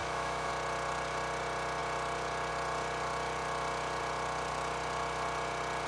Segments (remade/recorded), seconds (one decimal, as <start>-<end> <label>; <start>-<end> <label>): 0.0-0.5 remade; 0.5-5.9 recorded